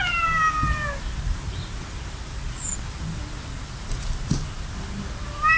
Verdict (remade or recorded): recorded